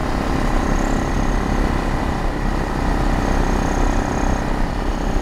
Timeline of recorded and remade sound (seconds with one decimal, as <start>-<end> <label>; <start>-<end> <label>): 0.0-0.6 remade; 0.6-5.2 recorded